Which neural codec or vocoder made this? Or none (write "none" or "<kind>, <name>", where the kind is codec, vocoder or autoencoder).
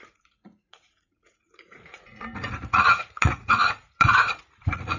vocoder, Vocos